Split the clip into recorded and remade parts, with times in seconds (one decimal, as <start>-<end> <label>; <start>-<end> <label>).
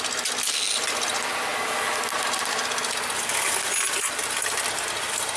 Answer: 0.0-5.4 recorded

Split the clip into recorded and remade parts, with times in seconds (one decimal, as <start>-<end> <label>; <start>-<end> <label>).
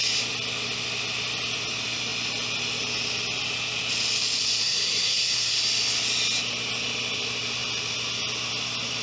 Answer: 0.0-4.4 recorded; 4.4-5.6 remade; 5.6-9.0 recorded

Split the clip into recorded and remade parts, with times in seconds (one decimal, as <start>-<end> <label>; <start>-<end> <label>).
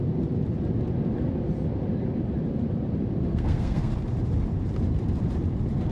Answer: 0.0-3.3 recorded; 3.3-3.9 remade; 3.9-5.9 recorded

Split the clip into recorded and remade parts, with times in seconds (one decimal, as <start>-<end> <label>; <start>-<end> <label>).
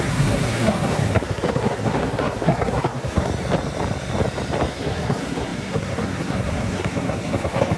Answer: 0.0-3.3 remade; 3.3-4.7 recorded; 4.7-7.8 remade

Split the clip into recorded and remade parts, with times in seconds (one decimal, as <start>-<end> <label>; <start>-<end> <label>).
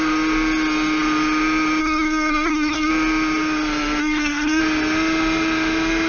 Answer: 0.0-1.8 recorded; 1.8-2.9 remade; 2.9-4.0 recorded; 4.0-4.6 remade; 4.6-6.1 recorded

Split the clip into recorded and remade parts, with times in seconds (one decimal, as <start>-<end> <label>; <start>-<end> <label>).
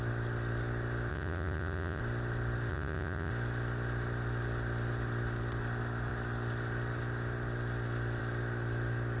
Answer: 0.0-1.1 recorded; 1.1-2.0 remade; 2.0-2.7 recorded; 2.7-3.3 remade; 3.3-9.2 recorded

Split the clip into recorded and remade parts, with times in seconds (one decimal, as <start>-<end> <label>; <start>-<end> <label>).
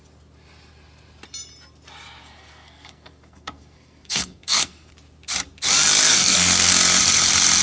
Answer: 0.0-2.2 recorded; 2.2-4.9 remade; 4.9-6.1 recorded; 6.1-6.7 remade; 6.7-7.6 recorded